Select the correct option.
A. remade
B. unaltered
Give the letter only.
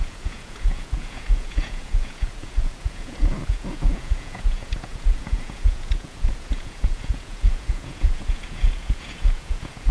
A